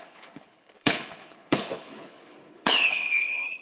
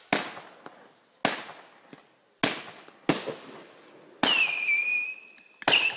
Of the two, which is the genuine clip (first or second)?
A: second